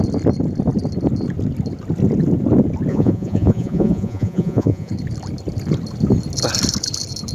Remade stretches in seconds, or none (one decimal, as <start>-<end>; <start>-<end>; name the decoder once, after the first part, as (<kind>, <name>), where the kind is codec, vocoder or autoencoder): 2.9-4.9 (vocoder, Vocos)